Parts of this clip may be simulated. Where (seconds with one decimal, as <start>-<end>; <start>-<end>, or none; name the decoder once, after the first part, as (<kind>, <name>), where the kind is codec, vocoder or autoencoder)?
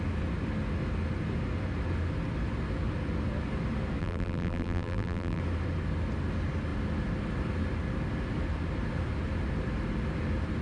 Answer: 4.0-5.4 (vocoder, BigVGAN v2)